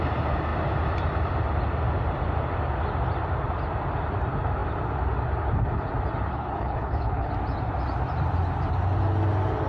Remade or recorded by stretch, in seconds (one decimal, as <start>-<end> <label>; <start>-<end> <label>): 0.0-6.3 recorded; 6.3-7.3 remade; 7.3-9.7 recorded